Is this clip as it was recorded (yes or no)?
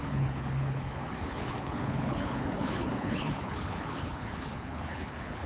no